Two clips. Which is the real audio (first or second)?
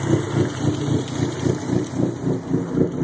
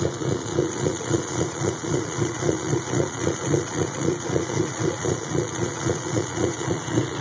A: first